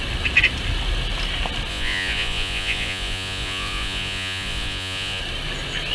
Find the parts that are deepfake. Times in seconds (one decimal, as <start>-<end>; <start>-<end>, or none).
1.7-5.2

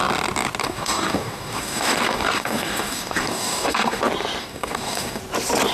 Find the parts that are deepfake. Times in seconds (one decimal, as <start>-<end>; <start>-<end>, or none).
0.6-4.0; 4.4-5.2

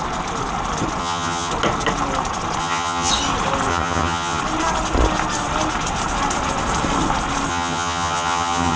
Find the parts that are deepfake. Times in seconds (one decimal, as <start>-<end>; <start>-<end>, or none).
1.0-1.5; 2.6-3.1; 3.7-4.4; 7.5-8.8

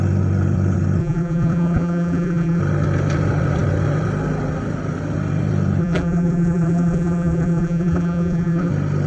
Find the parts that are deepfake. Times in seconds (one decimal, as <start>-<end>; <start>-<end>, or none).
1.0-2.6; 5.8-8.7

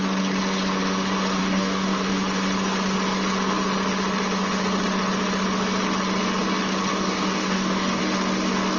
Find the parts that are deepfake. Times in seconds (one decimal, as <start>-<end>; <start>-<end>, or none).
1.4-2.1; 6.9-8.0

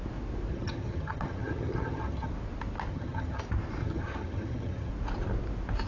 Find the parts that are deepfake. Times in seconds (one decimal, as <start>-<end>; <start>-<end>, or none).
0.5-2.3; 2.9-3.4; 3.8-4.9

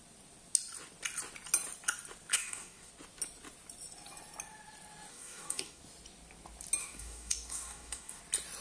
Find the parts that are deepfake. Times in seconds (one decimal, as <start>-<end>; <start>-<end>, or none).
2.3-2.9; 5.1-5.8; 6.8-8.2

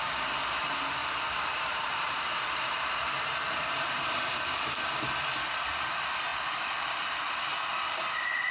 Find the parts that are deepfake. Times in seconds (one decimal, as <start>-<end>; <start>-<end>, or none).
1.0-4.9